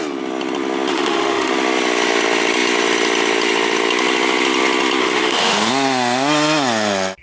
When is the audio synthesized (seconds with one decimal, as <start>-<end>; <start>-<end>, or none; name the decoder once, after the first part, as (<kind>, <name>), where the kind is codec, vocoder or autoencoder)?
0.9-1.5 (autoencoder, DAC-VAE); 5.0-5.7